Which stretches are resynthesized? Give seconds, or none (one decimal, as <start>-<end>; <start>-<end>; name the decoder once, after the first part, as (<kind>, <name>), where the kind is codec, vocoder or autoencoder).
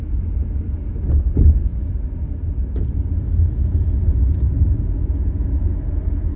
1.7-2.5 (vocoder, BigVGAN v2)